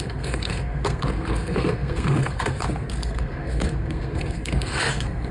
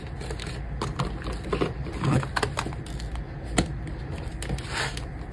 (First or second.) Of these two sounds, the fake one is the first